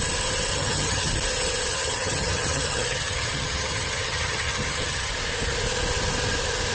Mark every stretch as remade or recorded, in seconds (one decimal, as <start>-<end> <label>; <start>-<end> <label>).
0.0-0.5 recorded; 0.5-1.1 remade; 1.1-1.7 recorded; 1.7-5.1 remade; 5.1-6.7 recorded